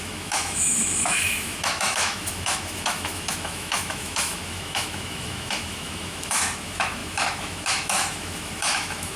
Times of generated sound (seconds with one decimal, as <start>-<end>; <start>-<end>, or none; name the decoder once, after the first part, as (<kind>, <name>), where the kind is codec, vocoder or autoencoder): 0.0-9.2 (autoencoder, DAC-VAE)